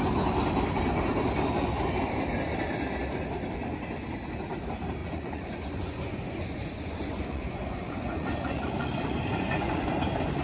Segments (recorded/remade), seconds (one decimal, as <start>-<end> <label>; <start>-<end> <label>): 0.0-5.0 recorded; 5.0-10.0 remade; 10.0-10.4 recorded